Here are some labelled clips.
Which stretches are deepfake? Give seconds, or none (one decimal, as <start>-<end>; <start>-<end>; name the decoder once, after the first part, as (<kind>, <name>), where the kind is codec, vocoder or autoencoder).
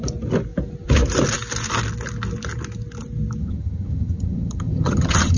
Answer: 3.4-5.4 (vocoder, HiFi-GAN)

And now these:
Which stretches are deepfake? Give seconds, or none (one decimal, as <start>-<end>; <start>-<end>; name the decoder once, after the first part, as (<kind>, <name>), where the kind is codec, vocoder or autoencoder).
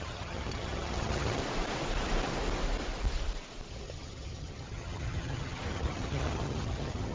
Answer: 0.0-1.4 (vocoder, HiFi-GAN); 3.7-7.1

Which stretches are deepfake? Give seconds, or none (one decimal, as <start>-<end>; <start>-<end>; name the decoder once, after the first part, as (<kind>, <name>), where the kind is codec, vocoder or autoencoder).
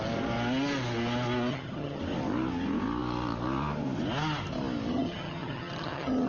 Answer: 1.5-2.0 (vocoder, HiFi-GAN); 4.9-6.3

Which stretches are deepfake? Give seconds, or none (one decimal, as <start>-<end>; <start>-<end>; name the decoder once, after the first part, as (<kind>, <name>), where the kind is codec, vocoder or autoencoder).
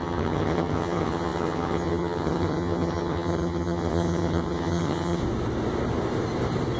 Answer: 0.0-5.2 (vocoder, HiFi-GAN)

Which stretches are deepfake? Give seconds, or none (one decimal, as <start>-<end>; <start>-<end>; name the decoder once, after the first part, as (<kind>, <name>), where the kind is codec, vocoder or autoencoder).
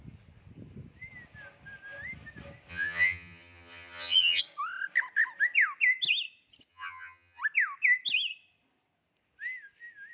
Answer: 2.7-4.4 (vocoder, HiFi-GAN); 6.7-7.4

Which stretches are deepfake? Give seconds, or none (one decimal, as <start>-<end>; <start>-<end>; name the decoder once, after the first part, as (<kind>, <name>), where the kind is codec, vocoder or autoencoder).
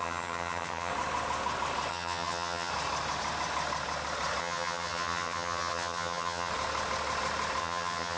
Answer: 0.0-0.9 (vocoder, HiFi-GAN); 1.9-2.7; 4.4-6.5; 7.6-8.2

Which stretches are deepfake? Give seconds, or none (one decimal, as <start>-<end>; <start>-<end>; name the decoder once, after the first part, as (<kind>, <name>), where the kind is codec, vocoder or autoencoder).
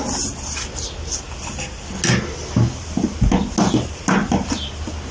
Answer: none